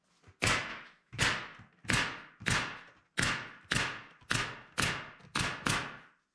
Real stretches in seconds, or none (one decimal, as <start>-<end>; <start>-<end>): 0.0-0.7; 1.2-6.3